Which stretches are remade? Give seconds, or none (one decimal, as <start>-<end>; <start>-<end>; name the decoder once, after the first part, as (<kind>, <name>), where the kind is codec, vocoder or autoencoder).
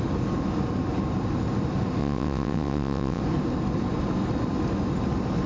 2.0-3.2 (vocoder, WaveNeXt)